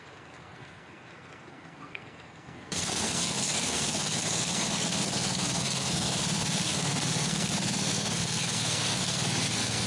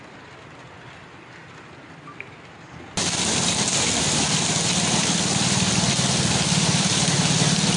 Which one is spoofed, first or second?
first